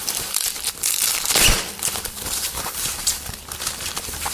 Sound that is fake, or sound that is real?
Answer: fake